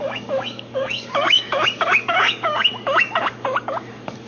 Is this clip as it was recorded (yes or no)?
no